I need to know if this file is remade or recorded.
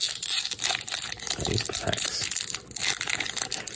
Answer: recorded